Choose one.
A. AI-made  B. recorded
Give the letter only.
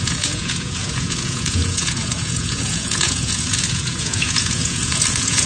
A